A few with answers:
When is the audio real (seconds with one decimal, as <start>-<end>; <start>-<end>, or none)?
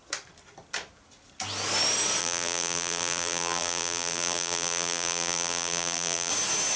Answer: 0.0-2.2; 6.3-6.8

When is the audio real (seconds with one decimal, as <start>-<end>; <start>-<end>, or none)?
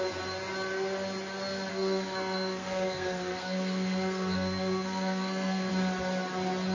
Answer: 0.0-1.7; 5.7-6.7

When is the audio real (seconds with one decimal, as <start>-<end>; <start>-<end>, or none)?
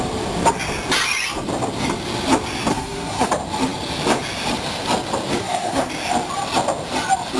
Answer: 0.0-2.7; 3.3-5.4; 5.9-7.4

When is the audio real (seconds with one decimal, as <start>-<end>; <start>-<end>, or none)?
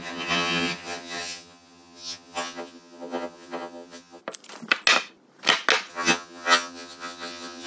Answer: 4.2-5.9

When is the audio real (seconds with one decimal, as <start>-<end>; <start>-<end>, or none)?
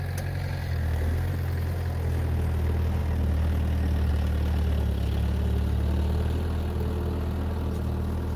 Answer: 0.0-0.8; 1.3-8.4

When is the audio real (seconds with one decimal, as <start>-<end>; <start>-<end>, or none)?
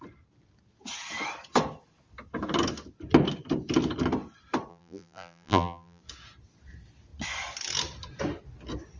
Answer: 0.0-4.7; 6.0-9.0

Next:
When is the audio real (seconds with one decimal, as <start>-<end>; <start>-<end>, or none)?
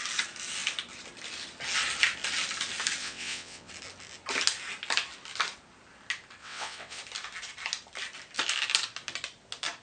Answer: 0.0-3.0; 3.7-6.4; 7.0-9.8